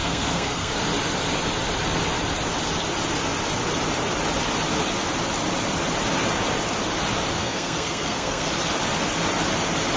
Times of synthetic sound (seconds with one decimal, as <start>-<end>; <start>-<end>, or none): 0.0-0.7; 7.4-8.5